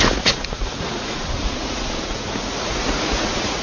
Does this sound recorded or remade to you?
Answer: remade